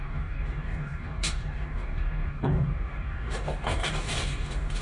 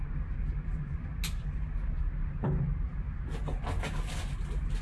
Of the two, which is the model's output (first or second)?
first